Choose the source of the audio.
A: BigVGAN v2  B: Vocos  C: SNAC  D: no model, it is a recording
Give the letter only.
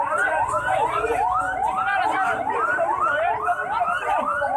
D